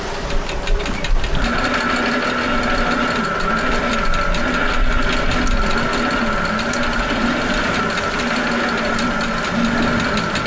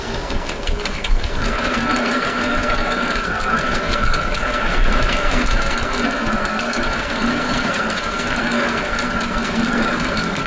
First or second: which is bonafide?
first